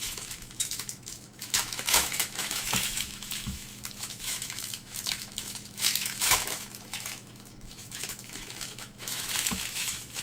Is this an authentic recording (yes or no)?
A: no